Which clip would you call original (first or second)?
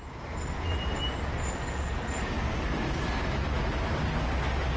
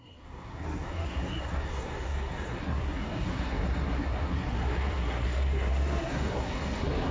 first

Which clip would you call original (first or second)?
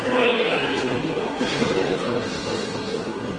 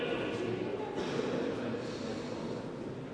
second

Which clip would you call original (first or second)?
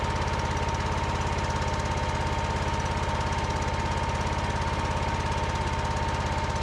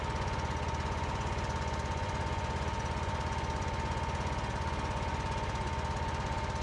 first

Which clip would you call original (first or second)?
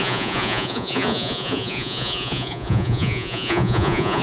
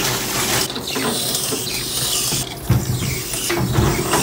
second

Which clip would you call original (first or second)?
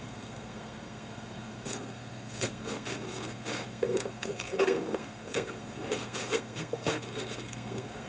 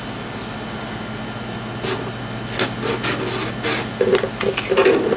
second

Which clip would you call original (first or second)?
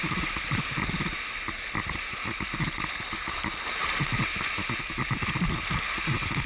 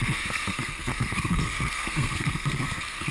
first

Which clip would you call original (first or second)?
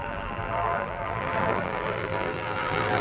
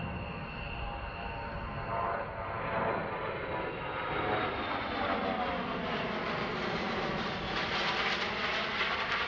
second